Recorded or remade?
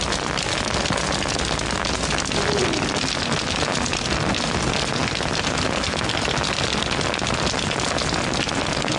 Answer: recorded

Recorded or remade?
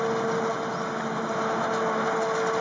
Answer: recorded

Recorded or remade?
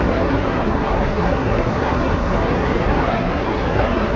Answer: remade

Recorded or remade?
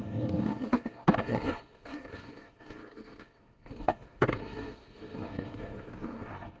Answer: remade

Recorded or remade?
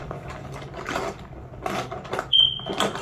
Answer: recorded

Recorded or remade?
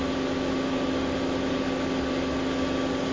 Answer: recorded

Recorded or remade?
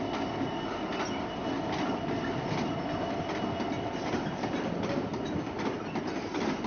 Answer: recorded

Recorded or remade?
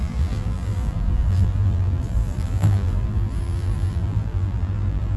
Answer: remade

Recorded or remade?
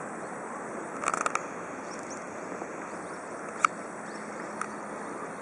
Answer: recorded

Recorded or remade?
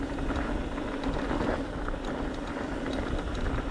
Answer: recorded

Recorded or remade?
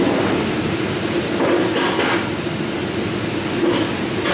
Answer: recorded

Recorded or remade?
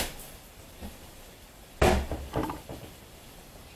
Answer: recorded